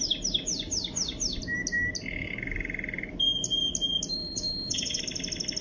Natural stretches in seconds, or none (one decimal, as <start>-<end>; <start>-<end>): 0.0-4.2; 5.0-5.6